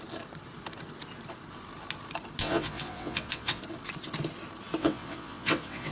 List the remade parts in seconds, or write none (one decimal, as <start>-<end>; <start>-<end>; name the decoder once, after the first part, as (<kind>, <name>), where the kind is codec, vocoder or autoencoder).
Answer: 2.4-3.6 (vocoder, WaveNeXt); 4.8-5.9